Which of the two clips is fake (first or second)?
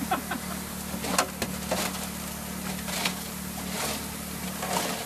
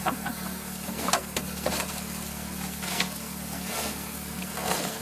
second